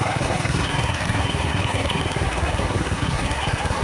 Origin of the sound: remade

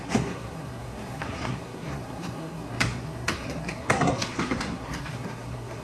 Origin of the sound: remade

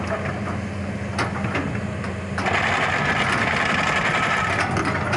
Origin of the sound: recorded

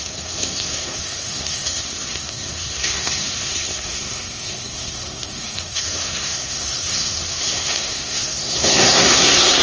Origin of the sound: remade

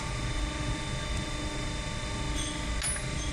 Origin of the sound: recorded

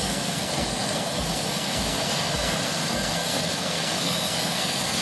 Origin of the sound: remade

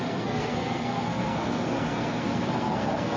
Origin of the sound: remade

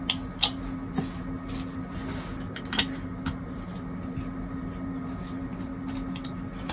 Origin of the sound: recorded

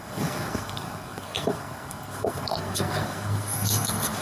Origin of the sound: remade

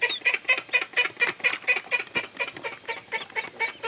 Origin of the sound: recorded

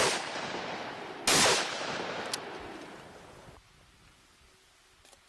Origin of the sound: recorded